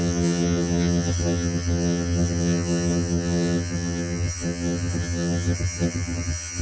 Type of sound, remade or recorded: remade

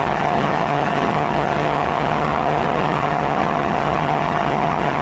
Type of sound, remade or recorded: remade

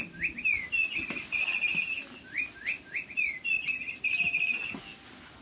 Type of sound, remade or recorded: recorded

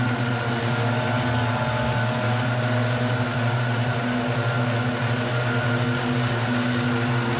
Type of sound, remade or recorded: recorded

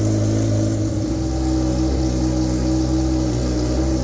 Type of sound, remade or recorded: recorded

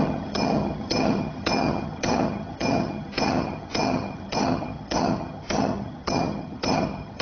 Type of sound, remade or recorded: remade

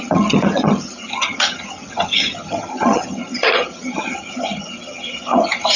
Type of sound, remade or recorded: remade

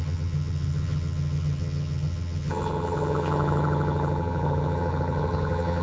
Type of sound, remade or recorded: remade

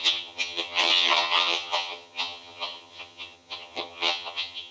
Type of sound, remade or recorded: remade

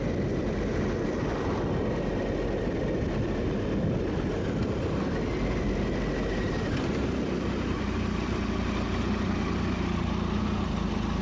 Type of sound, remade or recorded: recorded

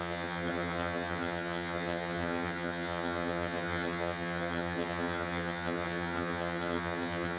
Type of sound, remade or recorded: remade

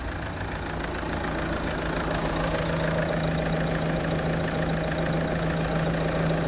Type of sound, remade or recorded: recorded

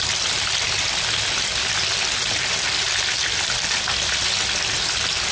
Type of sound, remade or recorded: recorded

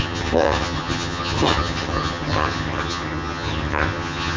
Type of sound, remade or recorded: remade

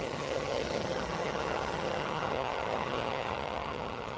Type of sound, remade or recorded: remade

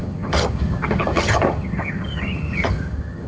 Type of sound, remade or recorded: remade